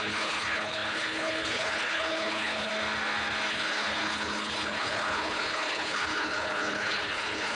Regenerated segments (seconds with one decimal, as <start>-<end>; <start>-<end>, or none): 0.0-2.7; 3.5-7.5